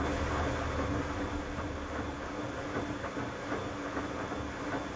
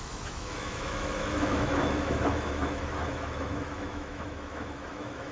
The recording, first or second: first